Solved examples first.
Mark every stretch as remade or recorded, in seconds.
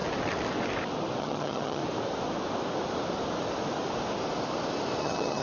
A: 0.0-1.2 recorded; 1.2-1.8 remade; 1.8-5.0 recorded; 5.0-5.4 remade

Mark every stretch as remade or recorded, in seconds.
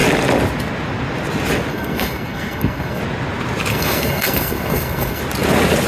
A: 0.0-1.7 recorded; 1.7-3.0 remade; 3.0-3.7 recorded; 3.7-5.2 remade; 5.2-5.9 recorded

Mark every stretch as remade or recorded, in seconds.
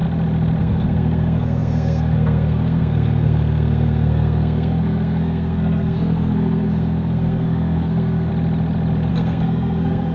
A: 0.0-0.6 recorded; 0.6-8.3 remade; 8.3-9.1 recorded; 9.1-10.1 remade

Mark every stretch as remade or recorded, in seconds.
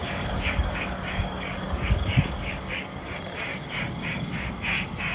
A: 0.0-3.1 remade; 3.1-3.5 recorded; 3.5-4.5 remade; 4.5-5.1 recorded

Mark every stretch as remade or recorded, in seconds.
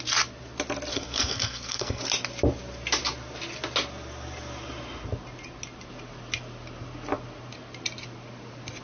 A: 0.0-0.9 recorded; 0.9-2.0 remade; 2.0-8.8 recorded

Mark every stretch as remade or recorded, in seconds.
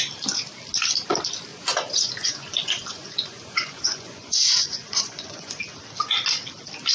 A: 0.0-1.5 recorded; 1.5-5.6 remade; 5.6-6.9 recorded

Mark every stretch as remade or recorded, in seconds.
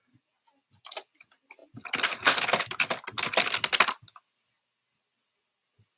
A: 0.0-6.0 recorded